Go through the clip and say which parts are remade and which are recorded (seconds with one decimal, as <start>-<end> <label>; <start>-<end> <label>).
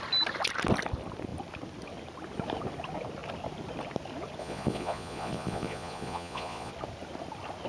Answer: 0.0-4.4 recorded; 4.4-6.7 remade; 6.7-7.7 recorded